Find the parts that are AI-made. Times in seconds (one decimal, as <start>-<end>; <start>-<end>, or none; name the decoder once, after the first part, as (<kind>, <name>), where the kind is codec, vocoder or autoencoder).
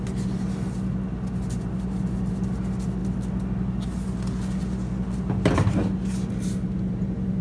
none